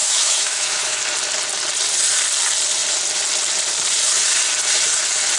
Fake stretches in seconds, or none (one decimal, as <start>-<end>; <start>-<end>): 0.0-1.0